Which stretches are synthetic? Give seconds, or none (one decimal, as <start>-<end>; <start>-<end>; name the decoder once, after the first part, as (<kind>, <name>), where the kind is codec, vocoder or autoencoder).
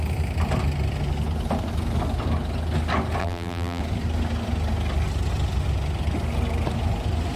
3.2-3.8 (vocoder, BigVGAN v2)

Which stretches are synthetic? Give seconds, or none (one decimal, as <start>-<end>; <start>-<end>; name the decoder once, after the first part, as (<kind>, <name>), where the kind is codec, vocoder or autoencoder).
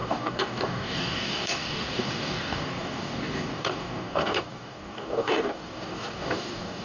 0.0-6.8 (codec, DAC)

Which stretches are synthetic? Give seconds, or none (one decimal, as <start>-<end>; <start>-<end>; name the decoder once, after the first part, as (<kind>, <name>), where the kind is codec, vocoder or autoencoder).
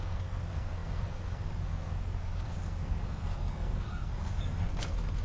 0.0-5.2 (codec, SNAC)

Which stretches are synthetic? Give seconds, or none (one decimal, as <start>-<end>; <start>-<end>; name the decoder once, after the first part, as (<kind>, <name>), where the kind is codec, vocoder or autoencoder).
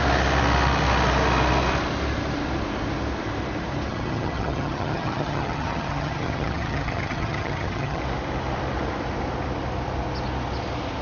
3.9-8.0 (vocoder, HiFi-GAN)